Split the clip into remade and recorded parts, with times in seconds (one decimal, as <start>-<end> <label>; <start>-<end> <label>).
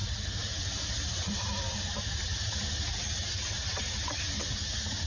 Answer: 0.0-5.1 recorded